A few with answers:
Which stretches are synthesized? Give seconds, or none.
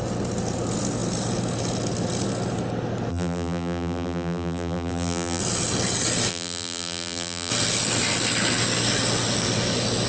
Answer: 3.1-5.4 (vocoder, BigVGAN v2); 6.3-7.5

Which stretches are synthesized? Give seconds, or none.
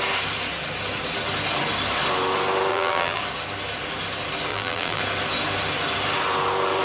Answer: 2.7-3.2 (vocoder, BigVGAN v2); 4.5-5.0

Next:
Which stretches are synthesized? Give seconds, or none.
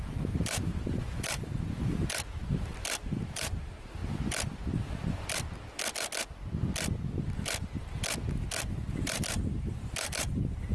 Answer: 0.0-4.0 (vocoder, BigVGAN v2); 8.7-10.7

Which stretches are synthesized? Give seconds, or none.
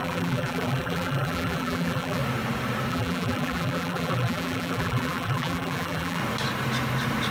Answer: 0.0-2.2 (vocoder, BigVGAN v2); 2.9-6.2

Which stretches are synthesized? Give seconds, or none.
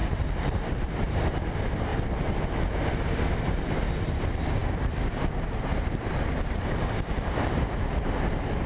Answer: 0.0-1.9 (vocoder, BigVGAN v2); 4.0-8.7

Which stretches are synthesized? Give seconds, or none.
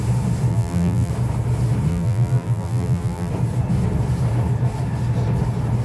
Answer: 0.5-1.1 (vocoder, BigVGAN v2); 1.9-3.3